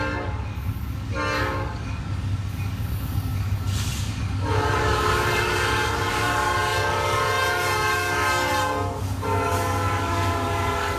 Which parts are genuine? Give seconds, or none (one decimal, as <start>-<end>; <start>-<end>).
none